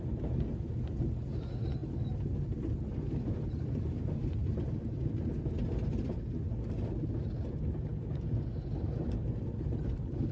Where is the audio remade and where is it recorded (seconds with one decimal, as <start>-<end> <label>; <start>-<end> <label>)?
0.0-1.8 recorded; 1.8-4.8 remade; 4.8-7.9 recorded; 7.9-9.8 remade; 9.8-10.3 recorded